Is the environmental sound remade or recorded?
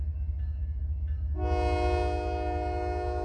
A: recorded